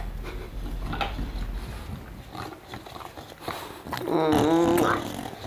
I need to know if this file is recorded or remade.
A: recorded